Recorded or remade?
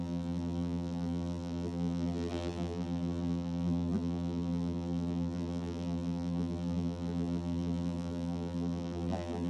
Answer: remade